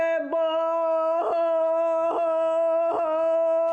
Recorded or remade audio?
recorded